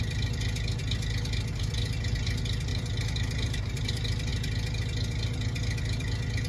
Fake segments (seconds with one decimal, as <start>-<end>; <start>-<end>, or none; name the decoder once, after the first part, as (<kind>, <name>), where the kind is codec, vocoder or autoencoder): 2.7-3.9 (vocoder, BigVGAN v2)